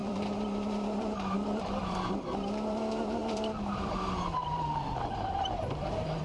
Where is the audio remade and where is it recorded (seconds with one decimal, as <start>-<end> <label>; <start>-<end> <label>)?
0.0-6.2 remade